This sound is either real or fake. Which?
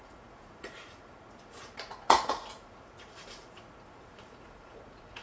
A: fake